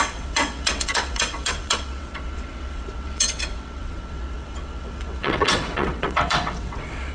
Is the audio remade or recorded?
remade